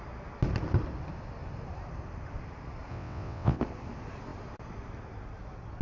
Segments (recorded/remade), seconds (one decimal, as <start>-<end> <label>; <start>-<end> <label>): 0.0-2.9 recorded; 2.9-3.6 remade; 3.6-5.8 recorded